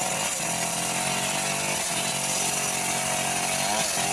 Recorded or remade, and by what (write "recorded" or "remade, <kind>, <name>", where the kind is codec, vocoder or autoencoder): recorded